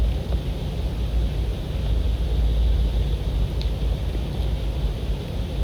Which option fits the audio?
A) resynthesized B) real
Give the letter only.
B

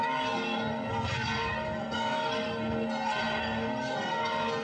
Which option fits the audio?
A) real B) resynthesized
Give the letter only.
B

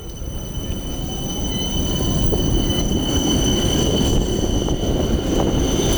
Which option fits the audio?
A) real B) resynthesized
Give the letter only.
A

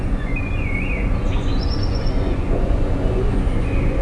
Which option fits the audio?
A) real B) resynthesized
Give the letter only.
B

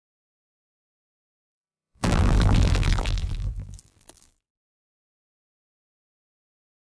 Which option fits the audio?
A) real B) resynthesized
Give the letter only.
B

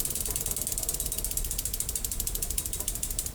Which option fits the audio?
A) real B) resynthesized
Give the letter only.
A